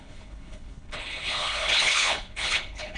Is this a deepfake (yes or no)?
yes